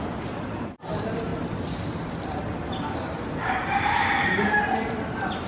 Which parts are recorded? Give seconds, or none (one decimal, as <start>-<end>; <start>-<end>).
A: none